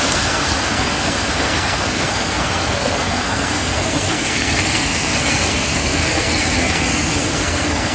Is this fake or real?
fake